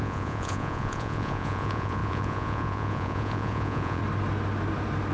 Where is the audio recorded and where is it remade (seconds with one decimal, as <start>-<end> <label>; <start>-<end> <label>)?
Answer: 0.0-4.0 remade; 4.0-5.1 recorded